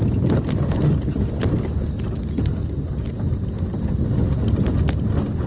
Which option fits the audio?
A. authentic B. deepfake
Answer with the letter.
A